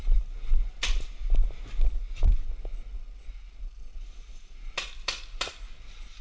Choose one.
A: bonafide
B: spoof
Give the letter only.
A